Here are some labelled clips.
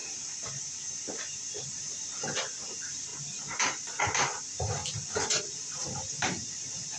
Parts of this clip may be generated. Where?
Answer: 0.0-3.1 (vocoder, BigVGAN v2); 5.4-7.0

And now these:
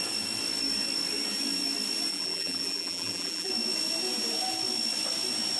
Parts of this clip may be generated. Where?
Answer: 2.1-3.5 (vocoder, BigVGAN v2)